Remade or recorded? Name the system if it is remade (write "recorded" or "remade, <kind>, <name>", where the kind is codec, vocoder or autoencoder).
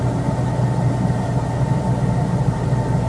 recorded